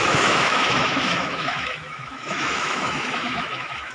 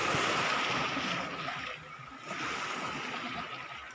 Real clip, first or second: second